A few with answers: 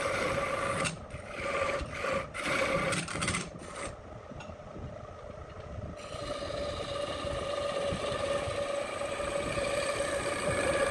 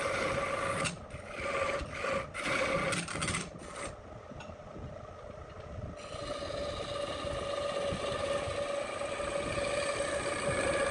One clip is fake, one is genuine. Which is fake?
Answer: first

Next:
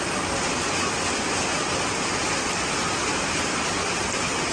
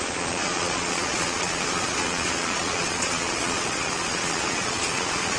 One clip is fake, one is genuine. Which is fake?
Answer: second